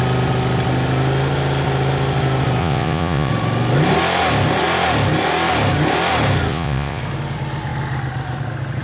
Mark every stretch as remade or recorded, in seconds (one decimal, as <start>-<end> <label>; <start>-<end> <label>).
0.0-2.6 recorded; 2.6-3.3 remade; 3.3-6.5 recorded; 6.5-7.0 remade; 7.0-8.8 recorded